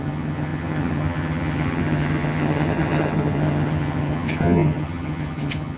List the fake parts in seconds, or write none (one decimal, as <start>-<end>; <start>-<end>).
0.0-5.8